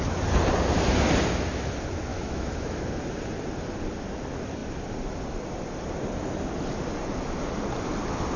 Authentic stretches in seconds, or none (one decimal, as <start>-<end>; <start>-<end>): 0.0-2.1; 2.8-8.4